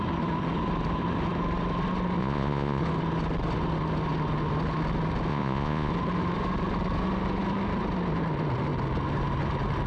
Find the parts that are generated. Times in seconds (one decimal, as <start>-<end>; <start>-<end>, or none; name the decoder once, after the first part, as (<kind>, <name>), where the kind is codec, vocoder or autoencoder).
2.2-2.8 (vocoder, Vocos); 5.3-5.9